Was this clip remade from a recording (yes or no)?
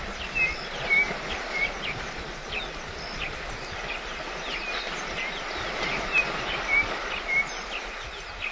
no